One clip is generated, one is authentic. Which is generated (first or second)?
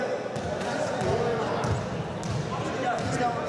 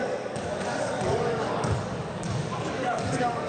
second